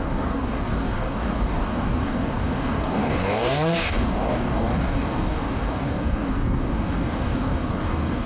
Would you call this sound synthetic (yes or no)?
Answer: yes